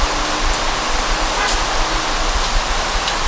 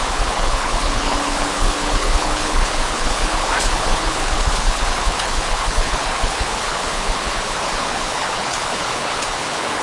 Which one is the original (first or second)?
first